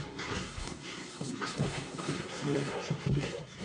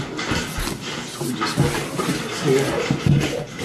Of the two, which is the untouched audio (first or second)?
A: second